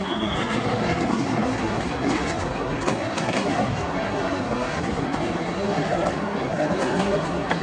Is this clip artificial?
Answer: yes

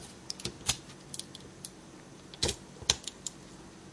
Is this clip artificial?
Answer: no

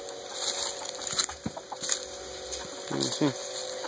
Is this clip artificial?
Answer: no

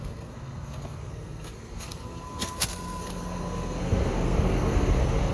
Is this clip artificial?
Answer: yes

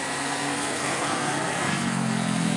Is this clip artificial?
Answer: yes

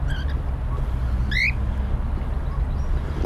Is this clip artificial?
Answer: no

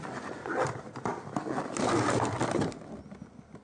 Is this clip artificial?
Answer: no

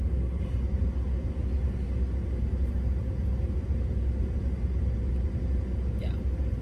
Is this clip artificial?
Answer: no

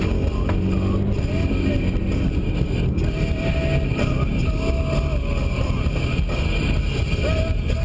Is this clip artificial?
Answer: no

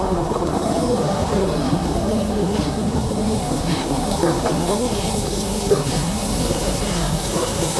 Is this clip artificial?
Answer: yes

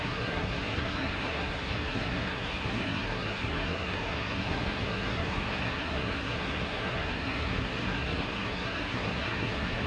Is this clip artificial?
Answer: yes